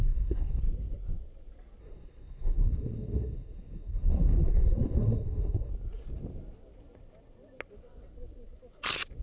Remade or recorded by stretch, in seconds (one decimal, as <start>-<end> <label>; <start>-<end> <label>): 0.0-0.6 remade; 0.6-1.8 recorded; 1.8-5.7 remade; 5.7-9.2 recorded